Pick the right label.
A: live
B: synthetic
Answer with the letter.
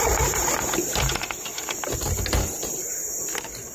A